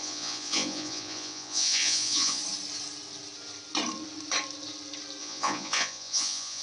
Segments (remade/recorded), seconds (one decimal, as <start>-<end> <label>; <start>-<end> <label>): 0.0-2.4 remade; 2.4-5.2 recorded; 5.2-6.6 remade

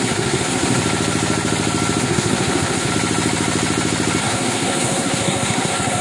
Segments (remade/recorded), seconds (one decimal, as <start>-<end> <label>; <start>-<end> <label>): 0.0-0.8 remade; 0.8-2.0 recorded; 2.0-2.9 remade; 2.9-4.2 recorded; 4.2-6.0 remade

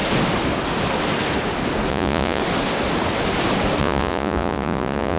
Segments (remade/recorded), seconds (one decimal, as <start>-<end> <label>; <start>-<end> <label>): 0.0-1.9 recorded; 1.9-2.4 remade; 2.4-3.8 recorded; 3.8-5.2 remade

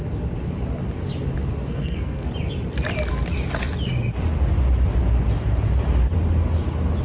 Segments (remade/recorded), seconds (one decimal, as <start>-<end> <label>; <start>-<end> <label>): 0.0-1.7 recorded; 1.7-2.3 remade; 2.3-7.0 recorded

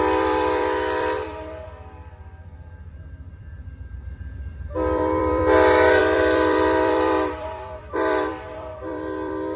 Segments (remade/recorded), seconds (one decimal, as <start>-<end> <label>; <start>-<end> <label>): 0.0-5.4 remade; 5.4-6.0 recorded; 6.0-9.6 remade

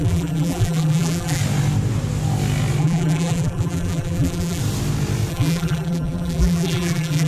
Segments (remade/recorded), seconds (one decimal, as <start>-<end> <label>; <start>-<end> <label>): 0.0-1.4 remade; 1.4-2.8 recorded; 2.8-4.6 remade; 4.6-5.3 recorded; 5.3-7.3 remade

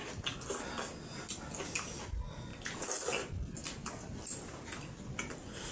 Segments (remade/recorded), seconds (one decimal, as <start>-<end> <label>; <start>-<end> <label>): 0.0-5.7 recorded

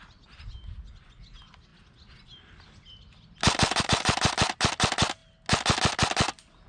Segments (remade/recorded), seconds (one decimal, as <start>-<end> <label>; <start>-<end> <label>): 0.0-6.7 recorded